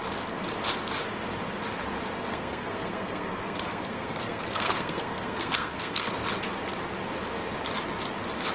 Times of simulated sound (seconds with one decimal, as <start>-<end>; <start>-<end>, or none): 2.3-6.1